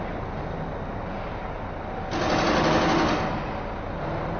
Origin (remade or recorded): recorded